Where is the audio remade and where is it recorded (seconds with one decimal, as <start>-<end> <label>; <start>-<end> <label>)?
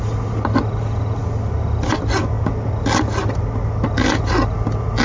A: 0.0-5.0 recorded